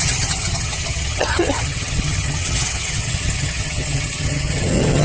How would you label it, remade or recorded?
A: remade